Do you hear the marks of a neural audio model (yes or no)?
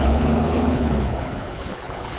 yes